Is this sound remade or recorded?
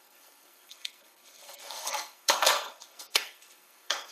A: remade